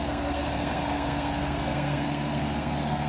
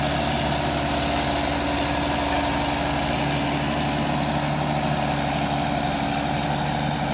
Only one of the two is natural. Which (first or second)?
second